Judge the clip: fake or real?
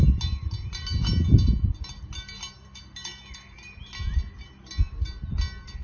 real